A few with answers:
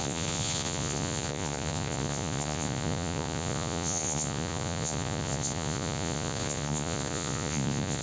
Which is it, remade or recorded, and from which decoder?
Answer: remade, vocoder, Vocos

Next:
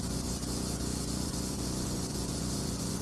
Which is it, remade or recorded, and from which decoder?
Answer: remade, vocoder, Vocos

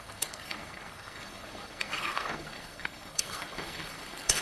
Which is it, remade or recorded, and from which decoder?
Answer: remade, codec, SNAC